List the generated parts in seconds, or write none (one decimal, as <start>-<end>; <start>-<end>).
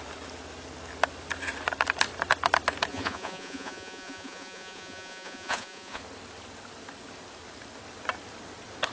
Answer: 2.9-6.0